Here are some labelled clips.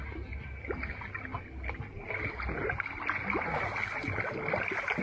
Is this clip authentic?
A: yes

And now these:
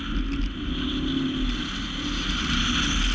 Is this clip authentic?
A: yes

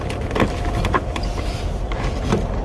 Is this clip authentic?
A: yes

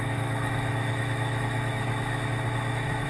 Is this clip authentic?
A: no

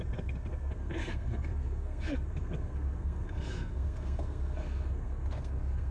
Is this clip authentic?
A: no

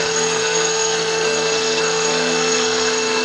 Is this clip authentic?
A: no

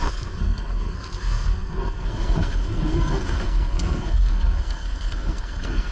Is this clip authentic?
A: no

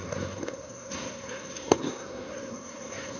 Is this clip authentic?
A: no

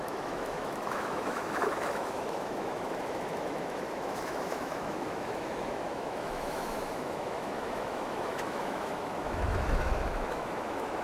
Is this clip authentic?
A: no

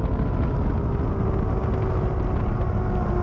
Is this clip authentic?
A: yes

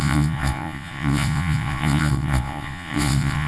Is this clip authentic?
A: no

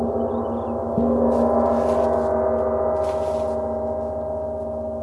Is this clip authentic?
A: yes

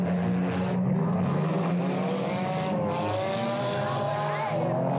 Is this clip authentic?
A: yes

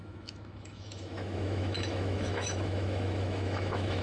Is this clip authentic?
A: no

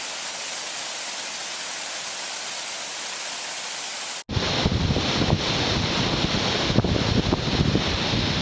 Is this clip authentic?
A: yes